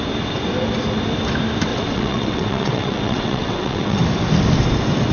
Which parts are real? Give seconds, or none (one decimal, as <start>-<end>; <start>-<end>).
0.0-1.7; 4.0-5.1